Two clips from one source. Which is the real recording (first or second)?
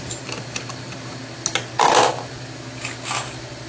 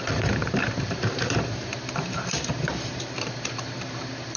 first